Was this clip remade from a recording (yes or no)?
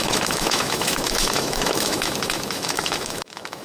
yes